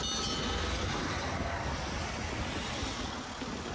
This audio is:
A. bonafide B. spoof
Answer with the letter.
A